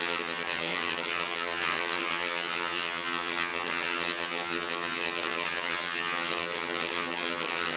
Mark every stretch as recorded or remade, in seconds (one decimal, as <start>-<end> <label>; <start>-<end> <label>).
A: 0.0-7.8 remade